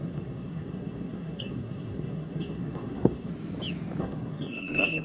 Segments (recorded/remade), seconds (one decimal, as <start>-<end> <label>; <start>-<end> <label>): 0.0-3.3 remade; 3.3-4.0 recorded; 4.0-5.0 remade

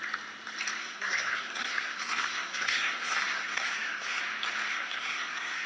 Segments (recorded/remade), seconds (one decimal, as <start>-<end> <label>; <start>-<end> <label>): 0.0-0.8 recorded; 0.8-4.2 remade; 4.2-4.7 recorded; 4.7-5.7 remade

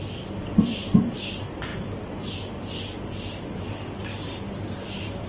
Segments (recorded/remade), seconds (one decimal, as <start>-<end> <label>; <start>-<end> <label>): 0.0-5.3 recorded

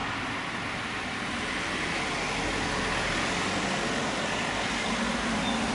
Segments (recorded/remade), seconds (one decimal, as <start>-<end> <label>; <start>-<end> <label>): 0.0-5.7 recorded

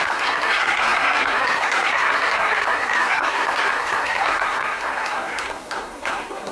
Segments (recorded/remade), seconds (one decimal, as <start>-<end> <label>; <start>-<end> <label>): 0.0-6.5 remade